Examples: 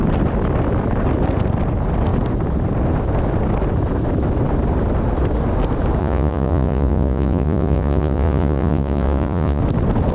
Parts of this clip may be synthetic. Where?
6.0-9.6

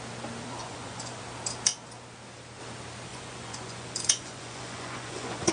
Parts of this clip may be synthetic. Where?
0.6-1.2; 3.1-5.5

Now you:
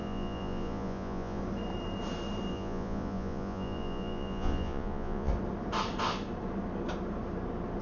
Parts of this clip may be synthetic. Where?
0.0-1.4; 2.5-5.3

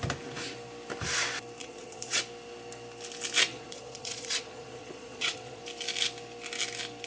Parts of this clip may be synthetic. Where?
1.6-2.2; 3.5-5.6

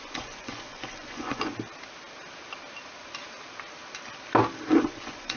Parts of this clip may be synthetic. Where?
0.0-1.5; 4.7-5.4

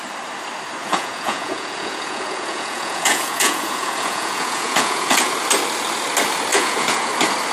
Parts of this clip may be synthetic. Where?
0.8-5.3; 6.5-7.1